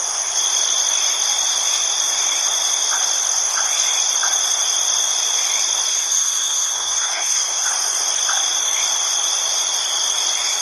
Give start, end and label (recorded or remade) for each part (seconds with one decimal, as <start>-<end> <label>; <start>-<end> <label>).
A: 0.0-5.9 recorded; 5.9-7.7 remade; 7.7-10.6 recorded